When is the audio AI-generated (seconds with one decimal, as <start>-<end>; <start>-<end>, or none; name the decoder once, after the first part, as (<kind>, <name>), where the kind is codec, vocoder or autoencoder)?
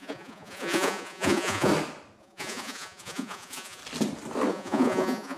0.0-1.7 (vocoder, Vocos); 2.2-3.8; 4.5-5.4